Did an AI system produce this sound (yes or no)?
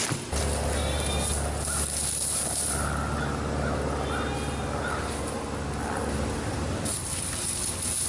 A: no